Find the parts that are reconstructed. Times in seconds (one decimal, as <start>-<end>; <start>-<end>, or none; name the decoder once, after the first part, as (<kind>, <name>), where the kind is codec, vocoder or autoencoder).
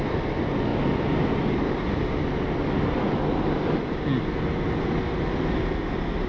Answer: none